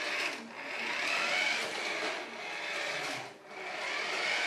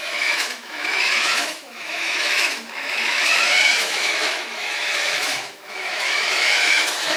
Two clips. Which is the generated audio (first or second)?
second